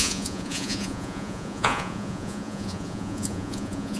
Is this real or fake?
fake